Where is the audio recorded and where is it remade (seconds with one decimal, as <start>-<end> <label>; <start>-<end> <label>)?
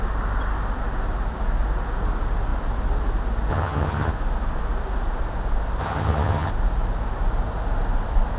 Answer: 0.0-3.5 recorded; 3.5-4.1 remade; 4.1-5.8 recorded; 5.8-6.5 remade; 6.5-8.4 recorded